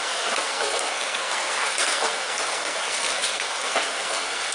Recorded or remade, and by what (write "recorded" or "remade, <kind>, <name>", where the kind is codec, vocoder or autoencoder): remade, codec, SNAC